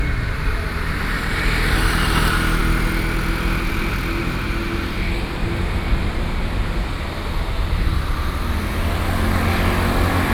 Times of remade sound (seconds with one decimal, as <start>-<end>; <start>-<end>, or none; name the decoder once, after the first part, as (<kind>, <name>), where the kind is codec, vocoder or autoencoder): none